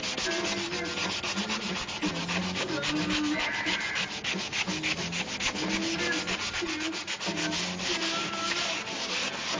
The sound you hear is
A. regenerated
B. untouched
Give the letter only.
B